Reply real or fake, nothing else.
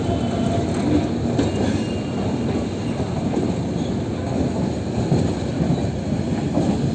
real